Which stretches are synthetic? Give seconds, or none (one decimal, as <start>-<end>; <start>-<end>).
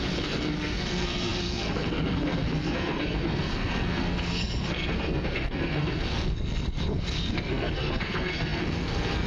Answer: 0.0-9.3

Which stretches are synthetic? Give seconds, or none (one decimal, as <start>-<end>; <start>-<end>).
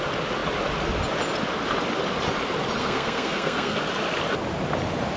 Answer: 2.8-3.8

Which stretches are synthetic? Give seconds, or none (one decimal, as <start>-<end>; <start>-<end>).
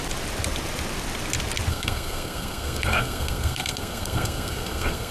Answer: 1.7-5.1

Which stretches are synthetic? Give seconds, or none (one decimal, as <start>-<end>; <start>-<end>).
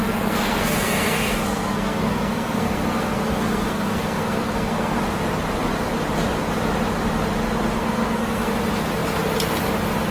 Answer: 0.0-5.0; 7.8-8.5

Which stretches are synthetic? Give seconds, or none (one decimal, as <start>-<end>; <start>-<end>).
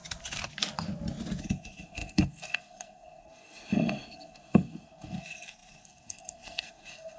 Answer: 1.4-7.2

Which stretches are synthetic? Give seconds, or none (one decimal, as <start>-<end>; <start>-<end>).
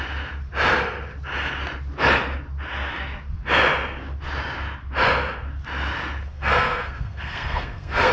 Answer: 6.3-8.1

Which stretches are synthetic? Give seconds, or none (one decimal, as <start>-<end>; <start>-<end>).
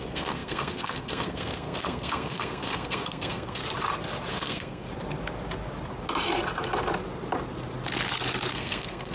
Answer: 0.0-3.6; 4.3-4.9; 8.5-9.1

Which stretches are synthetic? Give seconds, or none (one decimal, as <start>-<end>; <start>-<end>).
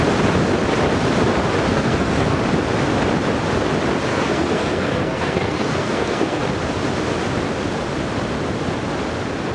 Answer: 1.7-2.4; 4.1-6.4